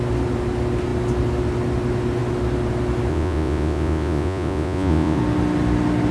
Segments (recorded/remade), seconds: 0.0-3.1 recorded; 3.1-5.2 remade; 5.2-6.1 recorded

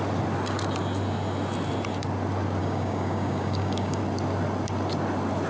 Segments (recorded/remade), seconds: 0.0-2.6 recorded; 2.6-4.0 remade; 4.0-5.5 recorded